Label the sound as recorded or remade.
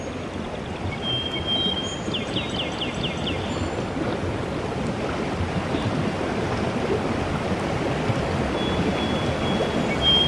recorded